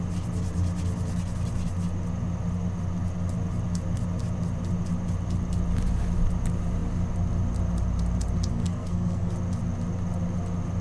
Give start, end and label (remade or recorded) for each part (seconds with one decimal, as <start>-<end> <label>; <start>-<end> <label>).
0.0-8.5 recorded; 8.5-9.3 remade; 9.3-10.8 recorded